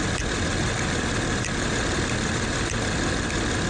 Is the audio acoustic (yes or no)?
yes